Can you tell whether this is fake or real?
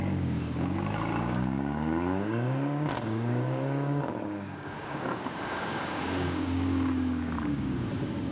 fake